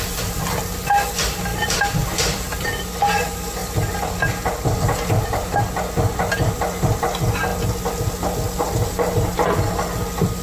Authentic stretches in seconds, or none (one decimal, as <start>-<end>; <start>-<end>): 0.0-1.5; 3.1-10.4

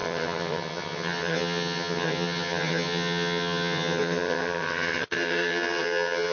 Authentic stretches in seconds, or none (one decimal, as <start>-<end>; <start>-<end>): none

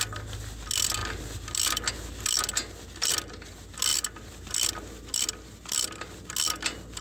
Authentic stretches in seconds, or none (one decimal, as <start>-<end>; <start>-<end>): 0.0-7.0

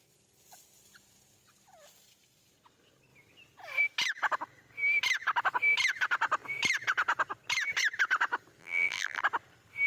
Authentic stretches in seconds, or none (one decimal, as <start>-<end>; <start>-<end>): 0.0-8.6; 9.2-9.9

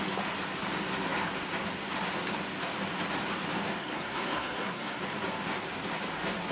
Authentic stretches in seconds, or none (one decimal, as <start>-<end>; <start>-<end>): 0.0-3.8; 5.0-6.5